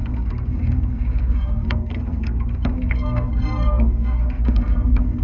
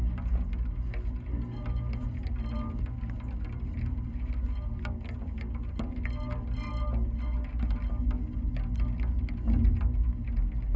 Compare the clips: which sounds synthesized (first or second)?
first